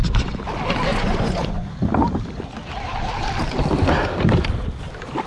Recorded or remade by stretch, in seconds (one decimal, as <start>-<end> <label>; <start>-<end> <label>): 0.0-0.9 recorded; 0.9-1.8 remade; 1.8-5.3 recorded